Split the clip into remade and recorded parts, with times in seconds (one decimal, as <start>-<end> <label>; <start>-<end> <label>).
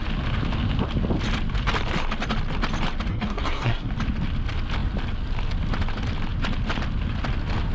0.0-3.1 recorded; 3.1-3.9 remade; 3.9-7.7 recorded